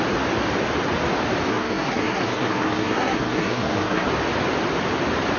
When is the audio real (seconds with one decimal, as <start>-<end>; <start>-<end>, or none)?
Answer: 0.0-1.5; 4.1-5.4